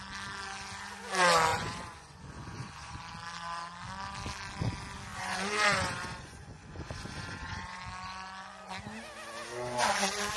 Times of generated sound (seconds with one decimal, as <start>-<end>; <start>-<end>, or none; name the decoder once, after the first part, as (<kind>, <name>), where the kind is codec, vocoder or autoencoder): 1.5-3.0 (vocoder, Vocos); 5.1-7.8